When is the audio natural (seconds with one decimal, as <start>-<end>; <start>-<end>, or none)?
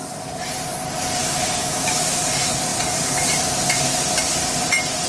0.0-1.2; 2.2-5.1